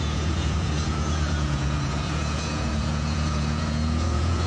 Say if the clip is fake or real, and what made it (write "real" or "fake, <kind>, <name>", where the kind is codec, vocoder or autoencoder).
fake, vocoder, Vocos